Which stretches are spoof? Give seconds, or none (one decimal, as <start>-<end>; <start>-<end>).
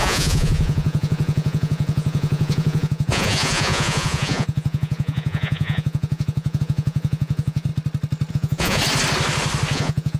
0.0-7.7; 8.3-8.8; 9.7-10.2